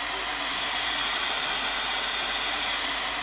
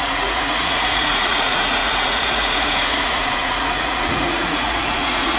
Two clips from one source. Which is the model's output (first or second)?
second